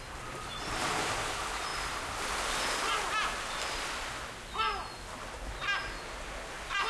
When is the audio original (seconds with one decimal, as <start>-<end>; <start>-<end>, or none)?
0.0-6.9